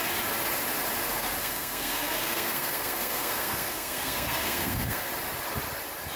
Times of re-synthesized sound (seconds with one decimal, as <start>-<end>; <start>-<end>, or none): 1.4-5.1